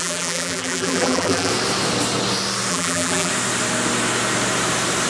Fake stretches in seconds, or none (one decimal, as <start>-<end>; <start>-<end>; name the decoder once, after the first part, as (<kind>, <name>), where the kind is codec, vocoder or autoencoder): 0.0-1.5 (vocoder, BigVGAN v2); 2.7-3.3